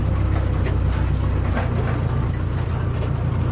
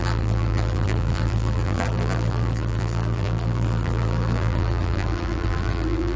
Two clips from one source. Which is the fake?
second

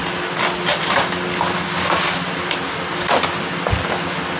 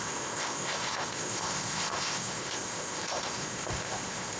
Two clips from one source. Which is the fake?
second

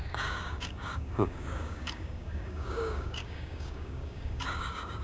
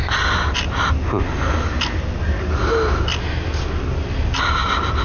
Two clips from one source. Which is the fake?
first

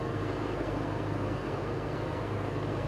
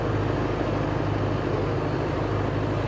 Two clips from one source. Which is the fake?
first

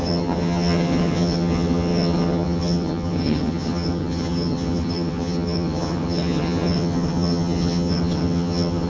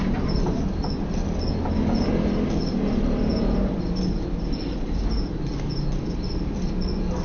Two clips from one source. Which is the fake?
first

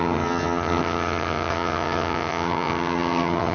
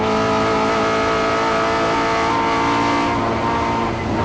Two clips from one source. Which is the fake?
first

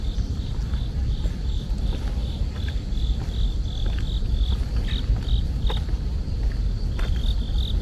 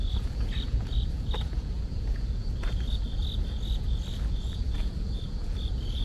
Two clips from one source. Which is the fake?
second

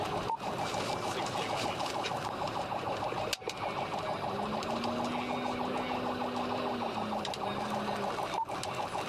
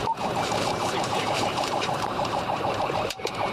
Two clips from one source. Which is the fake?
second